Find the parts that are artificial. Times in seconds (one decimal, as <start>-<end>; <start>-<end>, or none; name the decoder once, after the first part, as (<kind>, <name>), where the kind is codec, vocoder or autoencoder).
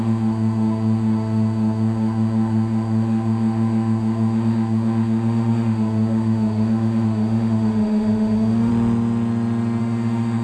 0.0-8.7 (autoencoder, DAC-VAE); 9.8-10.4